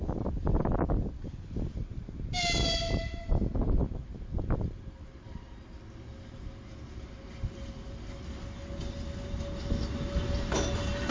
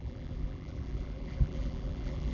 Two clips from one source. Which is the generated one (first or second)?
second